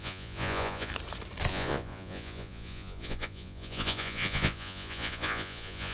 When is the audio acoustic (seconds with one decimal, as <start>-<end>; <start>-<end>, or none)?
0.9-1.5